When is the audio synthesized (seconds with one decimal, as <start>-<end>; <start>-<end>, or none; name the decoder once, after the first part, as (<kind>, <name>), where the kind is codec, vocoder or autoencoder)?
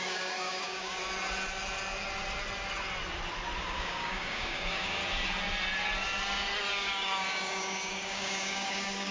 0.0-1.0 (codec, DAC); 3.6-5.0; 6.7-9.1